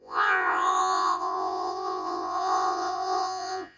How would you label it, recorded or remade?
remade